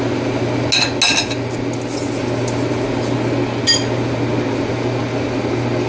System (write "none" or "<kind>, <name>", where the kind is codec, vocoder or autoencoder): none